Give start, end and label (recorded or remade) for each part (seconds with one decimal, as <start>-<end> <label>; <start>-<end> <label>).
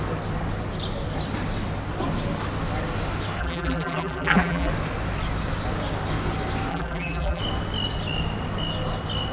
0.0-3.4 recorded; 3.4-4.7 remade; 4.7-6.7 recorded; 6.7-7.4 remade; 7.4-9.3 recorded